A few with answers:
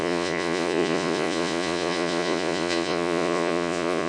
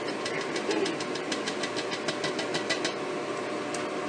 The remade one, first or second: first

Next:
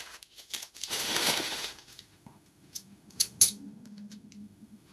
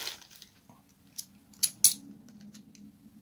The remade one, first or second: first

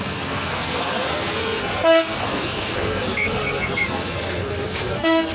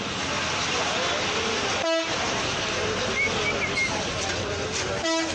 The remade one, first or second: first